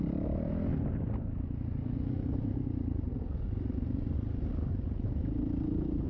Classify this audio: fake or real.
real